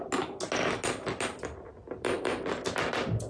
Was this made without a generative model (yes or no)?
yes